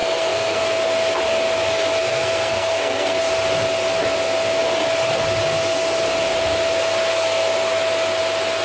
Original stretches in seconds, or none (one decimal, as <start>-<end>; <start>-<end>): 0.6-2.0; 3.2-8.6